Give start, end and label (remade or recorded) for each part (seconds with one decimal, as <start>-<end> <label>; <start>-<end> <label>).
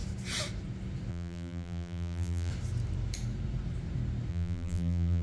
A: 0.0-1.1 recorded; 1.1-2.5 remade; 2.5-4.3 recorded; 4.3-5.2 remade